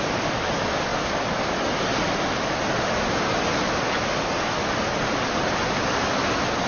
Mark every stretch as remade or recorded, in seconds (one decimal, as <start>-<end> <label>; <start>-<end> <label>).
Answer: 0.0-6.7 recorded